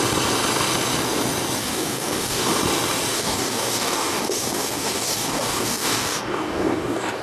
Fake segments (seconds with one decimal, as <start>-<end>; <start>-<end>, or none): 1.6-2.5; 3.1-7.2